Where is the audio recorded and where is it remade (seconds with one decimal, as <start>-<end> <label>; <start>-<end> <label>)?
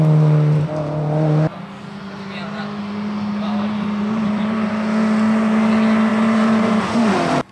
0.0-1.8 recorded; 1.8-4.7 remade; 4.7-6.1 recorded; 6.1-6.8 remade; 6.8-7.5 recorded